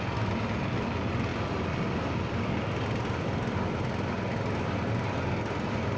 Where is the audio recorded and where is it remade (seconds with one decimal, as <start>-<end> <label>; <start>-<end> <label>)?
0.0-6.0 recorded